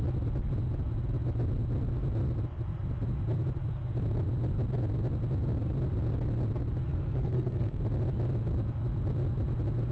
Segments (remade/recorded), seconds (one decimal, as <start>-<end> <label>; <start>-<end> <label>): 0.0-6.9 recorded; 6.9-7.8 remade; 7.8-9.9 recorded